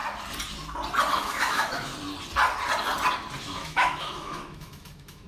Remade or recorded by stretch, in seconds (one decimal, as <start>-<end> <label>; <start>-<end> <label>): 0.0-1.1 recorded; 1.1-1.9 remade; 1.9-3.4 recorded; 3.4-5.3 remade